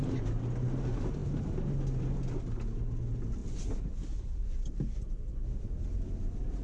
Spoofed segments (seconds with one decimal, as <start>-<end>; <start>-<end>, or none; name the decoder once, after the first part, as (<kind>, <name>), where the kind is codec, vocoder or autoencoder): 3.4-6.1 (vocoder, BigVGAN v2)